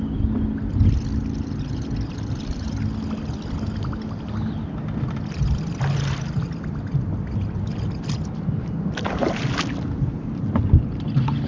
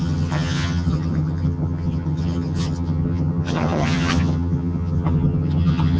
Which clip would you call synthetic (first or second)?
second